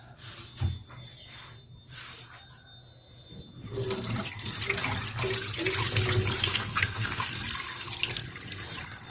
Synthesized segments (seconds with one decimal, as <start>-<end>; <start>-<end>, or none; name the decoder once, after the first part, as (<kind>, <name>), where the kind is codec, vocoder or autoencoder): 6.4-7.3 (codec, SNAC)